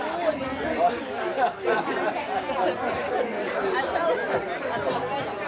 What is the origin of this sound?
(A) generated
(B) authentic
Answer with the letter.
B